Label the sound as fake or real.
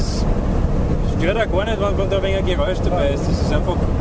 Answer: real